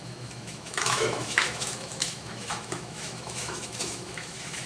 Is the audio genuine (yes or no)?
no